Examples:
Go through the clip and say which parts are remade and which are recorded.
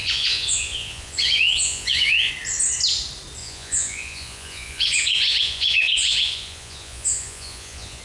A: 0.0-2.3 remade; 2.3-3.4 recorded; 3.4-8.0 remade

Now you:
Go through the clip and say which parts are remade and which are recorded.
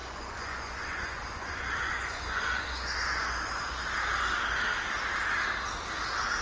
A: 0.0-3.8 remade; 3.8-6.4 recorded